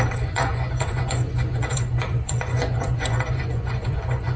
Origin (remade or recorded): remade